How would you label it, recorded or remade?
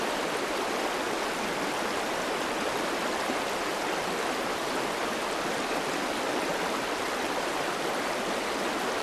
remade